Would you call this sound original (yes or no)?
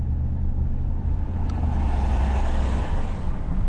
yes